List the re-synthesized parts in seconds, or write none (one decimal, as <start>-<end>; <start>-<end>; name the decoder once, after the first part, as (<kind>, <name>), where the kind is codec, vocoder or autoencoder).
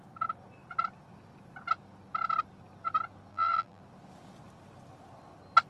3.3-3.8 (vocoder, BigVGAN v2)